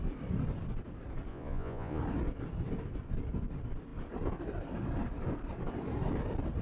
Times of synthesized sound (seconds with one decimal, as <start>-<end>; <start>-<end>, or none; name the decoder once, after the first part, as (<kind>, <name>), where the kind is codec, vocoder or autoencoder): 1.3-2.0 (vocoder, Vocos)